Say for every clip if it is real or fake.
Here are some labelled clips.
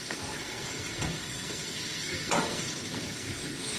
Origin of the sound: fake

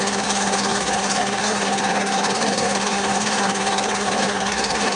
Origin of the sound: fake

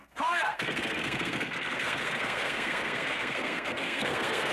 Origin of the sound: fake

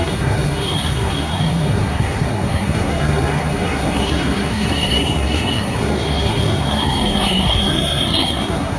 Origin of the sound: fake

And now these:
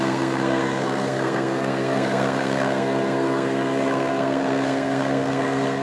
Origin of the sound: fake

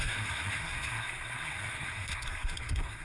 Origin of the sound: fake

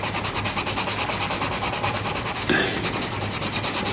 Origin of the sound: real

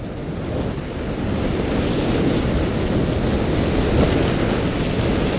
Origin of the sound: real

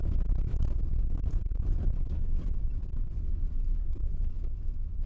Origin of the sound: real